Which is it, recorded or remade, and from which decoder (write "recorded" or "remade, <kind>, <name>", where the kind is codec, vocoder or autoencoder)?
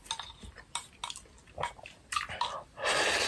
recorded